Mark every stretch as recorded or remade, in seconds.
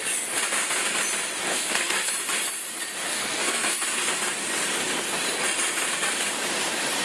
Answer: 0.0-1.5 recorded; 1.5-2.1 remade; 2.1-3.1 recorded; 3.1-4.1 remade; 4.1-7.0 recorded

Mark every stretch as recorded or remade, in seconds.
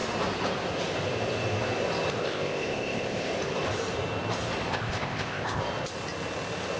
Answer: 0.0-2.2 recorded; 2.2-3.3 remade; 3.3-4.7 recorded; 4.7-5.6 remade; 5.6-6.8 recorded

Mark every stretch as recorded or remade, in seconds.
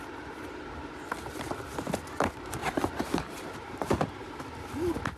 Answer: 0.0-2.6 recorded; 2.6-4.3 remade; 4.3-5.2 recorded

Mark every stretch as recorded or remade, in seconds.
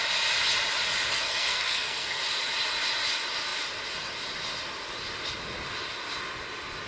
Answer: 0.0-1.1 recorded; 1.1-2.2 remade; 2.2-6.9 recorded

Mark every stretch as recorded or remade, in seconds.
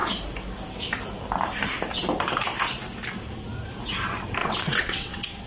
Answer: 0.0-4.4 recorded; 4.4-5.5 remade